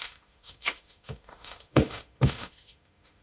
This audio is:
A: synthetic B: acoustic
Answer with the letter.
A